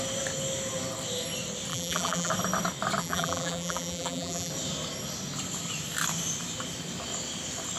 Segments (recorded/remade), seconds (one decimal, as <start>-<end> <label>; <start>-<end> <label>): 0.0-1.7 recorded; 1.7-2.3 remade; 2.3-3.0 recorded; 3.0-4.5 remade; 4.5-7.8 recorded